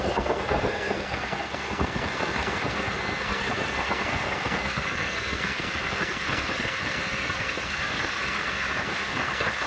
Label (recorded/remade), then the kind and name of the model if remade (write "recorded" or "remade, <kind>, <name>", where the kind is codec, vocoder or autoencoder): remade, codec, SNAC